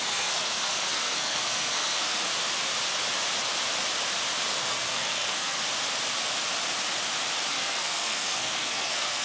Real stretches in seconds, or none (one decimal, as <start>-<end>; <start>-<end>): 2.3-4.5; 5.6-7.5